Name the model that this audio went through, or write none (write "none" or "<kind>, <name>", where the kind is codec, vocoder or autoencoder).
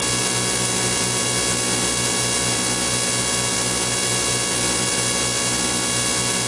none